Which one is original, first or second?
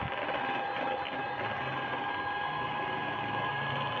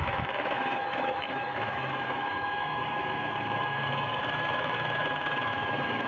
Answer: first